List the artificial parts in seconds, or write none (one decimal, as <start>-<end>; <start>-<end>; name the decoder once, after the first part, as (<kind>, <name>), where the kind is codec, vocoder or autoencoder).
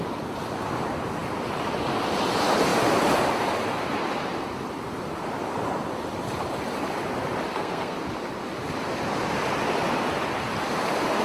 7.5-8.0 (codec, SNAC)